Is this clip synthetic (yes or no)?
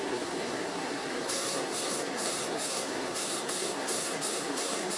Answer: yes